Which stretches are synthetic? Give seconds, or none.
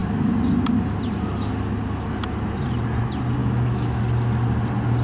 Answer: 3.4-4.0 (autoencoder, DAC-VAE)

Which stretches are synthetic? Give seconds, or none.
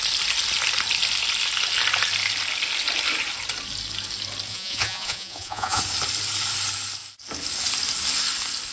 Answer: 4.5-5.8 (vocoder, Vocos)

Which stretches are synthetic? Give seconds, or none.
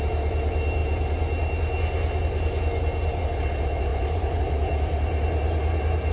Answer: 3.9-4.4 (vocoder, Vocos)